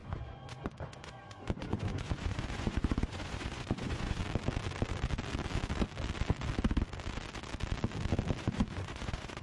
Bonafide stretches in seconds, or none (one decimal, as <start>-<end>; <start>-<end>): 4.2-8.4